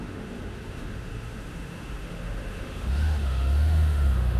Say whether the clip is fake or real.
fake